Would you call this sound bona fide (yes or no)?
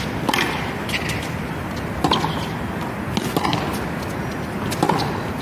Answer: yes